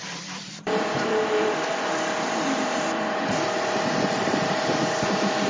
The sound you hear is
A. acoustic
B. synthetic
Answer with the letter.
B